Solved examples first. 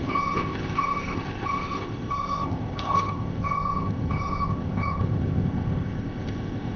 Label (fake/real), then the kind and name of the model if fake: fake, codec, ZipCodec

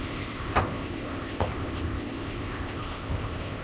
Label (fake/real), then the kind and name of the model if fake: fake, codec, ZipCodec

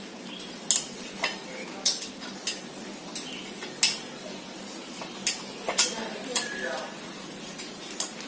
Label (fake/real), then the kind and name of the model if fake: real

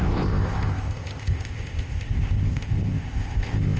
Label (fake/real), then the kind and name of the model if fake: fake, codec, ZipCodec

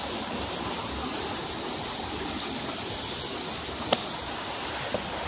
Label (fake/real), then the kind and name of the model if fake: real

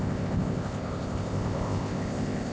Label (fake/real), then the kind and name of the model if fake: fake, codec, ZipCodec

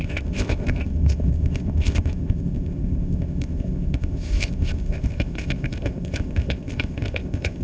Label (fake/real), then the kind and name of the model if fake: fake, codec, ZipCodec